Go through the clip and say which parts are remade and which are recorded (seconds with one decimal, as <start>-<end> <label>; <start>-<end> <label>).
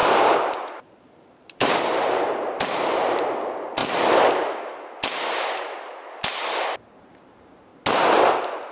0.0-3.8 remade; 3.8-6.9 recorded; 6.9-7.7 remade; 7.7-8.7 recorded